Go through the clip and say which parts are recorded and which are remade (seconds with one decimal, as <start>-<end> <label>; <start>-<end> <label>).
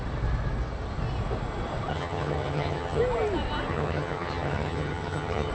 0.0-1.9 recorded; 1.9-3.0 remade; 3.0-3.7 recorded; 3.7-5.5 remade